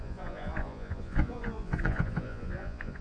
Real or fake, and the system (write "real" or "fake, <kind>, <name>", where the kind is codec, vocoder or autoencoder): fake, vocoder, Vocos